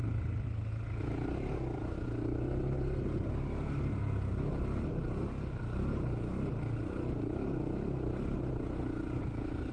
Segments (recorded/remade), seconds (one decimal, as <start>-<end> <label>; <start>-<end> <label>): 0.0-9.7 recorded